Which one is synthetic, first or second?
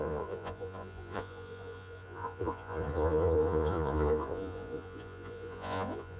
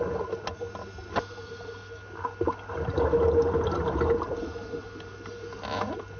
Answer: first